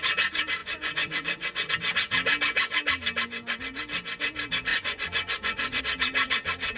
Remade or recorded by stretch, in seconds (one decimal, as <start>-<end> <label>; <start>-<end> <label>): 0.0-0.6 recorded; 0.6-1.7 remade; 1.7-4.7 recorded; 4.7-5.8 remade; 5.8-6.8 recorded